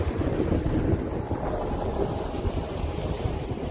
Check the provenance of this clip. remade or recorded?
recorded